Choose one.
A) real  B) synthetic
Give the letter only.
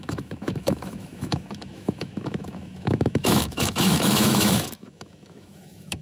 B